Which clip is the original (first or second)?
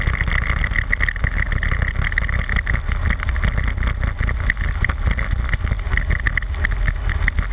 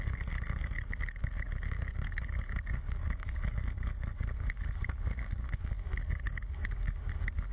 first